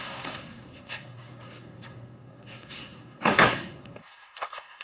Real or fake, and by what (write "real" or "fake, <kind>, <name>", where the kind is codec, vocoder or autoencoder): fake, codec, SNAC